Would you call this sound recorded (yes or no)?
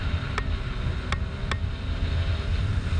yes